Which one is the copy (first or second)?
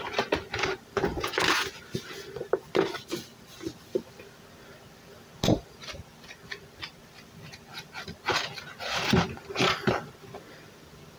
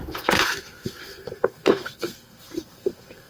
second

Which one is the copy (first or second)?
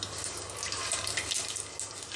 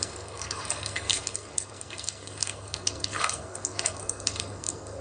second